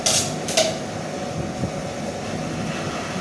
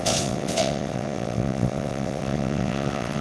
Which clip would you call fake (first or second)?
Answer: second